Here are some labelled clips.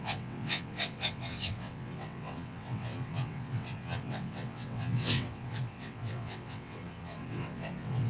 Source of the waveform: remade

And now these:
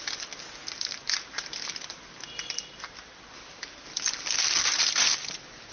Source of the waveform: recorded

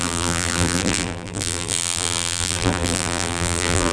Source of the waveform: remade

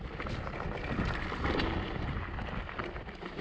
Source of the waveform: recorded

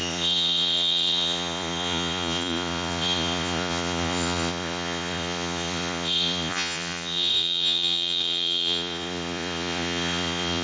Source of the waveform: remade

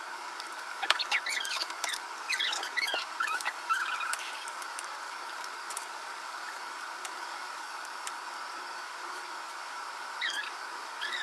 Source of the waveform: remade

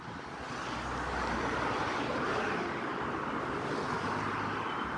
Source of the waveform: recorded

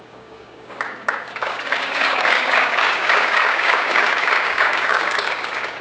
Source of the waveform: remade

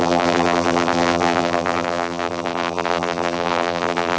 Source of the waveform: remade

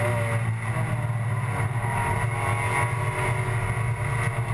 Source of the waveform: recorded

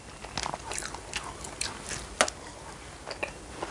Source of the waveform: recorded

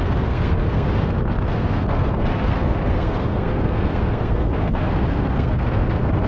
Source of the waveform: remade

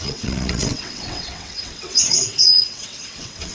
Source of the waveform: remade